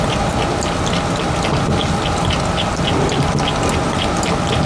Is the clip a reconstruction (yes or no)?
no